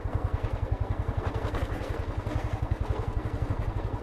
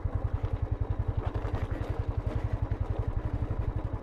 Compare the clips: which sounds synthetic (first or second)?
first